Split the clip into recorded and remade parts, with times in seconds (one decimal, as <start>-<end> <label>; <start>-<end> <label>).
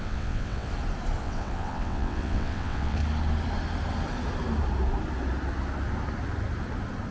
0.0-0.7 remade; 0.7-1.2 recorded; 1.2-3.0 remade; 3.0-7.1 recorded